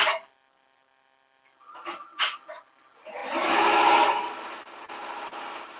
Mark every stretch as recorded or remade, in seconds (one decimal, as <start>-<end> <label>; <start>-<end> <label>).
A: 0.0-5.8 recorded